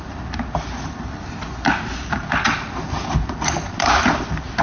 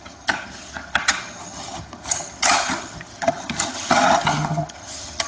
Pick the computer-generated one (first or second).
second